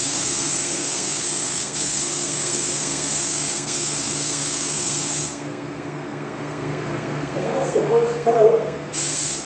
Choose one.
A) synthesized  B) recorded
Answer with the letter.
A